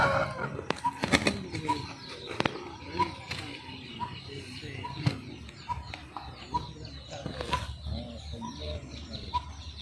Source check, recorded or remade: recorded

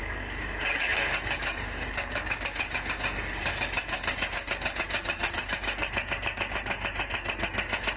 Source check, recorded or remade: remade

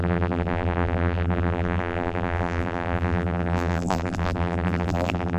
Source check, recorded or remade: remade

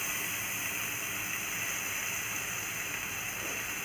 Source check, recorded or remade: recorded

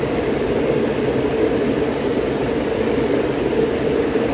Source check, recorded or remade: recorded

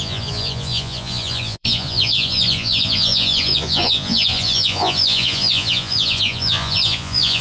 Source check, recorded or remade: remade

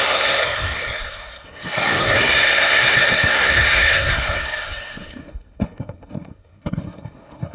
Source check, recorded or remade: remade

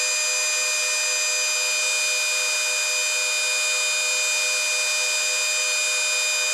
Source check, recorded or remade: recorded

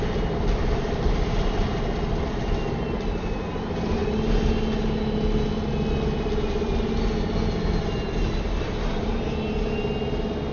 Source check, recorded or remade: recorded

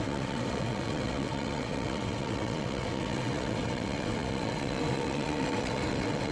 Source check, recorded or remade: remade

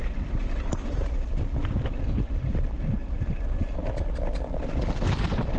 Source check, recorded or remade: recorded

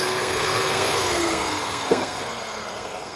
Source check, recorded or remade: remade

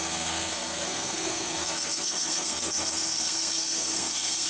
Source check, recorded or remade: remade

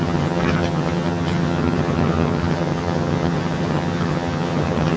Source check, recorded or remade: remade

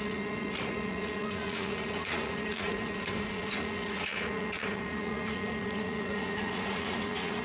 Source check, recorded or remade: remade